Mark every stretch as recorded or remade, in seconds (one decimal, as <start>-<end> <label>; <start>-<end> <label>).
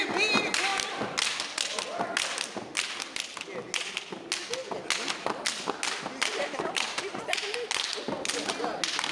0.0-9.1 recorded